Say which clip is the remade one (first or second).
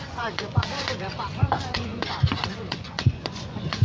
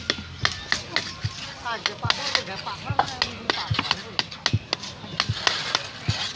first